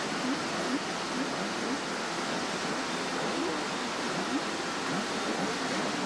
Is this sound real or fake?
real